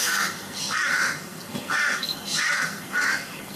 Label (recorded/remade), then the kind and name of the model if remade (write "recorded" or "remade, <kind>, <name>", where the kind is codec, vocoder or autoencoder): remade, codec, SNAC